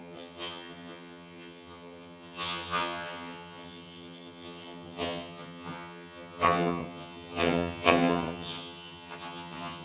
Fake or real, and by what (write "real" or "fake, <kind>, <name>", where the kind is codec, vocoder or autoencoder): fake, vocoder, HiFi-GAN